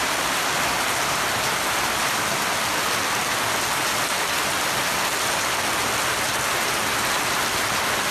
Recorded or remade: recorded